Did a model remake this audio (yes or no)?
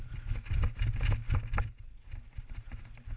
no